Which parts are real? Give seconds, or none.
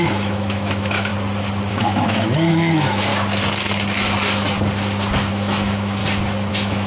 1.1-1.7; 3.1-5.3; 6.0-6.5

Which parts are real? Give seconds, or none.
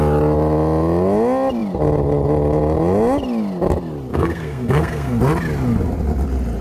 0.0-4.1; 5.2-6.6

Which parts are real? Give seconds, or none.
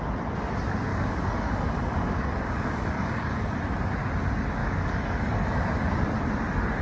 0.0-0.9; 3.6-4.6; 5.9-6.8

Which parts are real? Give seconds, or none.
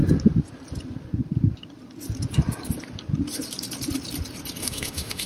0.0-4.6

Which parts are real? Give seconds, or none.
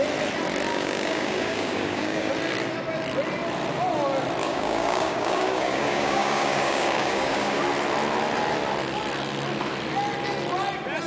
0.0-0.7; 2.3-4.4; 7.6-11.1